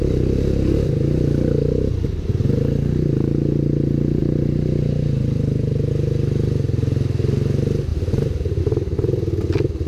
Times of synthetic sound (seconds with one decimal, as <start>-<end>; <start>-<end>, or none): 4.2-5.9; 7.9-8.6